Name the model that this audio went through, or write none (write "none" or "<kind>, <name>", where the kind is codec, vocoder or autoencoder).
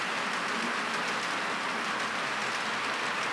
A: none